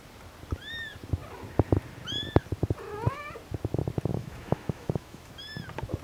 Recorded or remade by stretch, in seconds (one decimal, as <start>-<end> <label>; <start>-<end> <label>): 0.0-4.1 recorded; 4.1-5.3 remade; 5.3-6.0 recorded